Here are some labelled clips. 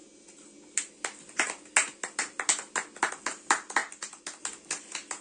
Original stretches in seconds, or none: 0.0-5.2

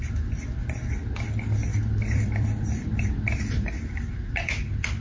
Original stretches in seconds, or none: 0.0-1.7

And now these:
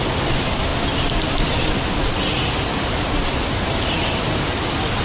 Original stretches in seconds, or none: 0.0-5.0

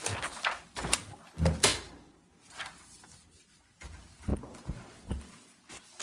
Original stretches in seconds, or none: 0.0-6.0

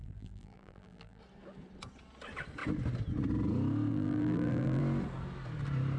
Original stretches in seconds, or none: 1.2-3.9; 4.8-6.0

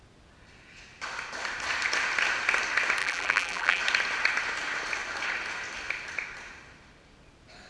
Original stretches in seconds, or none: 0.0-3.0; 3.8-7.7